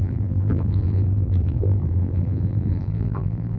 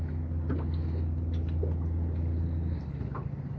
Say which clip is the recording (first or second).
second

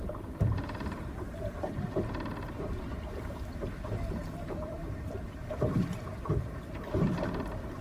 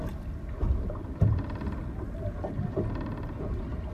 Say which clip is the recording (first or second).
second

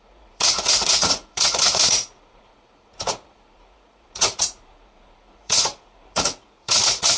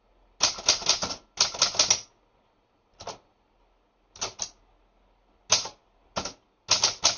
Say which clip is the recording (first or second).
second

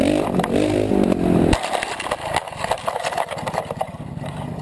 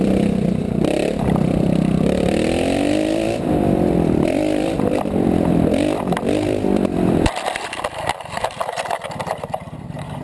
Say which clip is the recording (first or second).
first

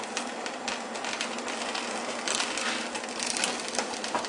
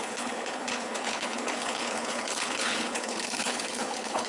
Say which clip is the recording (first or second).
first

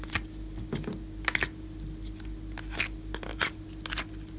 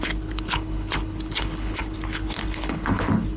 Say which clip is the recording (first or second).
first